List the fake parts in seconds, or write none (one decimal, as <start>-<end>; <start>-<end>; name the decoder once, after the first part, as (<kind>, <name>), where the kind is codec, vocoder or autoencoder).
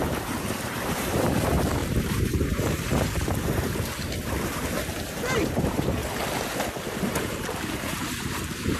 0.0-6.0 (vocoder, BigVGAN v2); 7.2-8.8